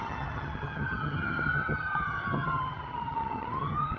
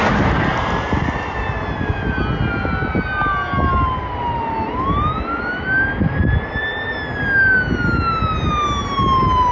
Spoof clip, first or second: first